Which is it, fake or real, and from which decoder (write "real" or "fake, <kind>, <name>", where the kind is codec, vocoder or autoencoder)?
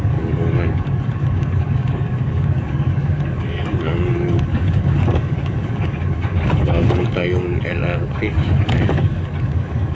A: fake, codec, DAC